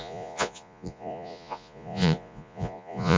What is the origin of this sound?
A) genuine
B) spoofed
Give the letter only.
B